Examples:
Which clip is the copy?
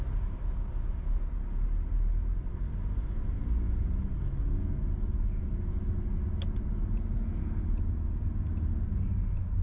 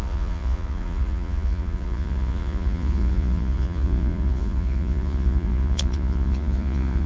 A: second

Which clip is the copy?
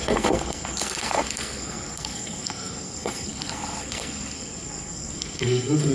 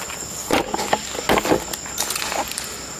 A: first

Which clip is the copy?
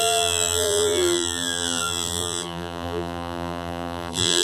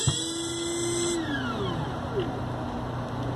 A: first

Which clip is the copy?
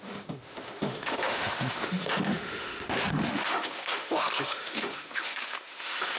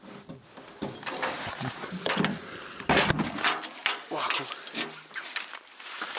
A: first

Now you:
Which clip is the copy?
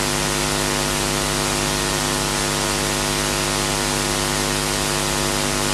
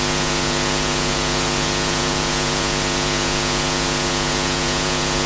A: second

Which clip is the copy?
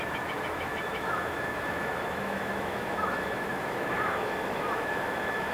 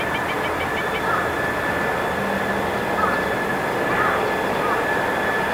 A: first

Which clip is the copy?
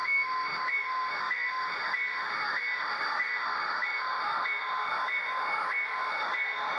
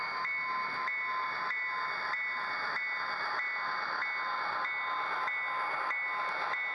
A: first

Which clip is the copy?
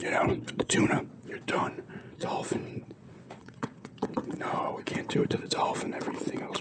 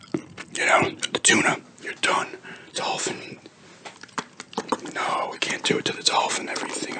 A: first